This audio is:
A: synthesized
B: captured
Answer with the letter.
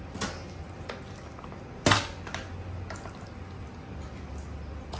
B